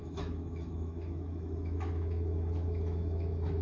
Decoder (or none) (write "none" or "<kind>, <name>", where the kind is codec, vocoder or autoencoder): autoencoder, DAC-VAE